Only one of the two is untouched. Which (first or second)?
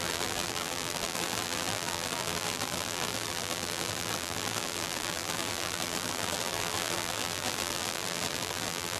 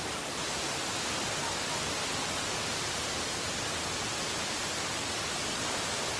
second